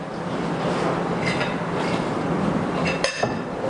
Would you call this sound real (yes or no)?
yes